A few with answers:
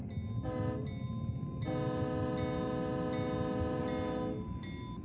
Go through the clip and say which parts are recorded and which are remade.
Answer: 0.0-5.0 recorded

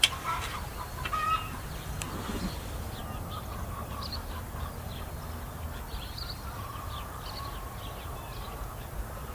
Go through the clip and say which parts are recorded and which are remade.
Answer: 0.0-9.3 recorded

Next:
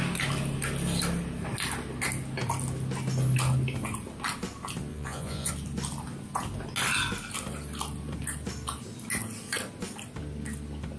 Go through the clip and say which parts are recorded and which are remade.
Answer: 0.0-4.9 recorded; 4.9-5.5 remade; 5.5-11.0 recorded

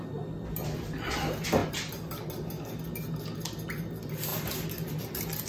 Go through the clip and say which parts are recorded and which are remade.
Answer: 0.0-5.5 recorded

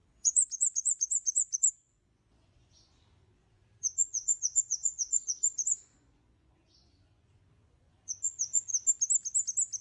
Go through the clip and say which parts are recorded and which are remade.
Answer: 0.0-8.7 remade; 8.7-9.8 recorded